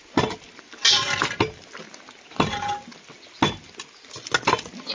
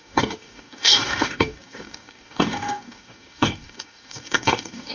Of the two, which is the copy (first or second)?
second